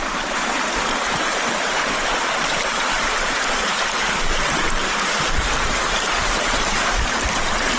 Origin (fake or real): fake